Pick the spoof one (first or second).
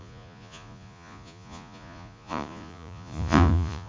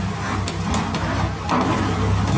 first